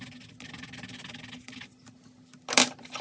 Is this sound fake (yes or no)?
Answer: no